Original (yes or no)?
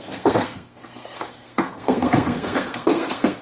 no